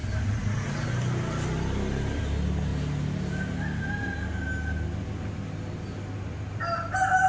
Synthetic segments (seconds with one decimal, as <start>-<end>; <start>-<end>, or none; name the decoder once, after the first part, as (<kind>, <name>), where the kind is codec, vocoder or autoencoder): none